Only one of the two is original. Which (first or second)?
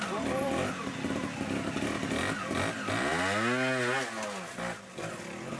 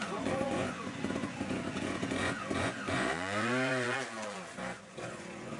first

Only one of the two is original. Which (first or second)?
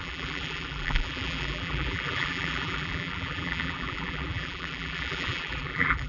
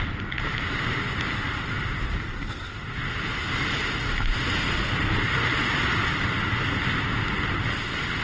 second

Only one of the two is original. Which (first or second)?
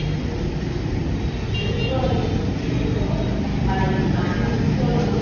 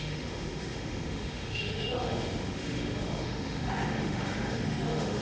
first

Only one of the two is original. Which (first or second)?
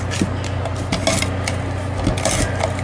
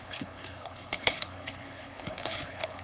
first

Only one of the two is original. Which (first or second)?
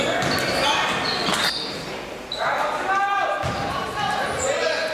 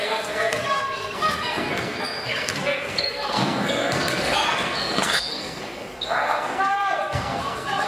first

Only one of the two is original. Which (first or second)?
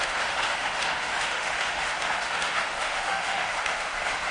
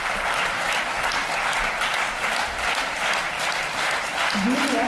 second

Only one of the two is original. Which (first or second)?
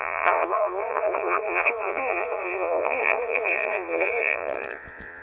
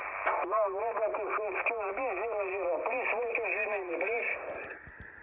second